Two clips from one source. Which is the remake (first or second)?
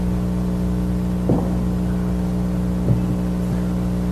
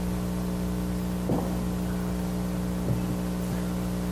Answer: second